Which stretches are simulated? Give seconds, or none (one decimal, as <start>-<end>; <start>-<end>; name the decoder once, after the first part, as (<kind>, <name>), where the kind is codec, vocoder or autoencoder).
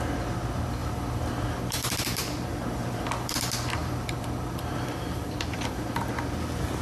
0.8-3.3 (vocoder, BigVGAN v2); 3.8-6.1